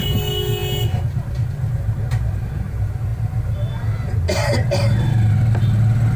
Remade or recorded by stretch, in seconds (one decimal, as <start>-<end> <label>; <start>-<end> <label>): 0.0-6.2 recorded